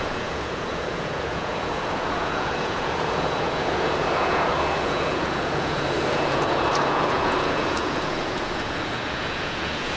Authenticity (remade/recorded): remade